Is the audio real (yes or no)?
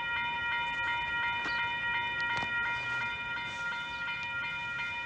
yes